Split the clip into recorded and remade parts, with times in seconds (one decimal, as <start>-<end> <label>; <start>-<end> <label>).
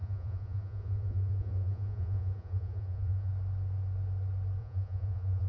0.0-3.3 remade; 3.3-4.6 recorded; 4.6-5.5 remade